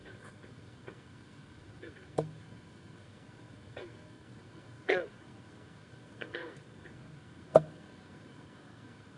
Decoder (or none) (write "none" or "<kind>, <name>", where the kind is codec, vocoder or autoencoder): codec, SNAC